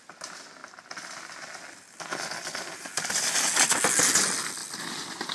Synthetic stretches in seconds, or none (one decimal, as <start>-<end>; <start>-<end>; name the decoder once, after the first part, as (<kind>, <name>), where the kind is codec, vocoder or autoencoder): none